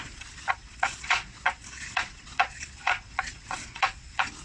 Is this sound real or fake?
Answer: fake